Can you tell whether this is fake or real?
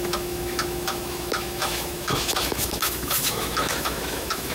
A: fake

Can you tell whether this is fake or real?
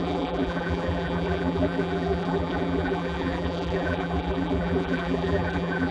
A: fake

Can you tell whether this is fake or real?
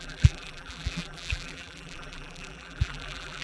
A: fake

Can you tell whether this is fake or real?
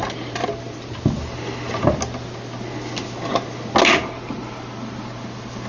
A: real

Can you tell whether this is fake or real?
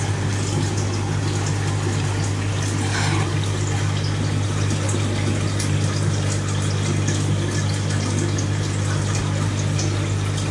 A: real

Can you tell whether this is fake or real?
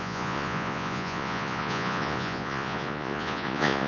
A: fake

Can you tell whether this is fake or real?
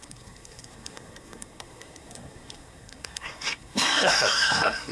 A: fake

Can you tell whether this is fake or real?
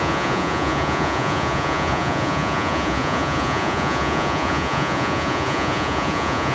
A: fake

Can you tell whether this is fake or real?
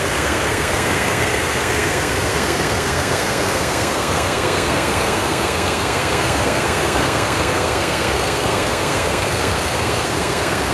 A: fake